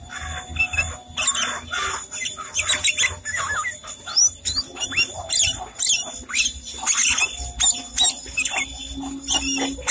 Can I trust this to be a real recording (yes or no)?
yes